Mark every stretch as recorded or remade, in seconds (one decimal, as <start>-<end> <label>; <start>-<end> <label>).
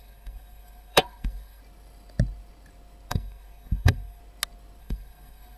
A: 0.0-1.6 remade; 1.6-3.1 recorded; 3.1-4.2 remade; 4.2-4.8 recorded; 4.8-5.6 remade